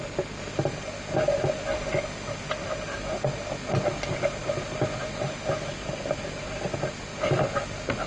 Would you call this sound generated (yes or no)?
no